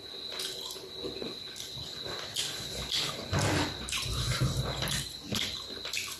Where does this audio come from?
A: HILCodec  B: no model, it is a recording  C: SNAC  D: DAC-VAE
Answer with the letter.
B